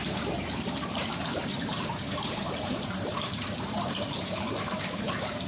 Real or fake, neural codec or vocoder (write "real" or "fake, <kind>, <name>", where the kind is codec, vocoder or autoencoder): fake, vocoder, BigVGAN v2